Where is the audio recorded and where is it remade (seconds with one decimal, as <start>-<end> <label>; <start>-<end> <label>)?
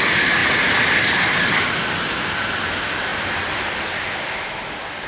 0.0-5.1 recorded